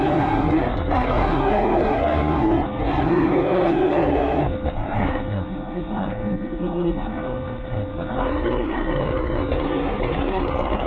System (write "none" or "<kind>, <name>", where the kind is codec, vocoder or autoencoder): codec, SNAC